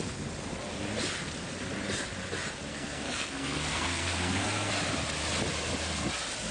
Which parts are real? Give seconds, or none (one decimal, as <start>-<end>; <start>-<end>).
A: 0.0-2.7; 4.7-6.5